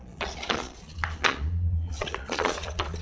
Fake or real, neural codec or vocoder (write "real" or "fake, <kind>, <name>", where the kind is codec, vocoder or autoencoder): fake, vocoder, Vocos